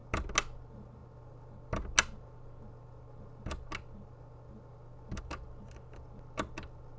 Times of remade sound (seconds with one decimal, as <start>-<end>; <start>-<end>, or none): none